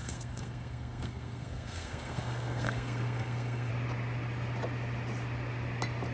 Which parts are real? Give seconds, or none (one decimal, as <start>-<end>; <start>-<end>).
3.7-6.1